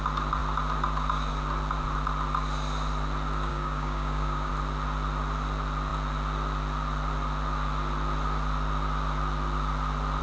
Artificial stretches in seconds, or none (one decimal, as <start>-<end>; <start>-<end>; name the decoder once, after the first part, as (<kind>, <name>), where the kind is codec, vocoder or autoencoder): 3.5-4.5 (codec, DAC)